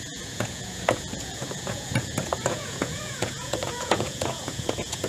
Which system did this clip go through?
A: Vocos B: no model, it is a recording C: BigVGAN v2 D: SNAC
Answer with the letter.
A